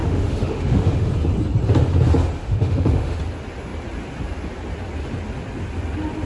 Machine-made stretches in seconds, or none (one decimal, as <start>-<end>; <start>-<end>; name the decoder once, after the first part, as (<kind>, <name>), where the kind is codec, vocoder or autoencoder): 0.0-1.1 (autoencoder, DAC-VAE); 2.4-3.2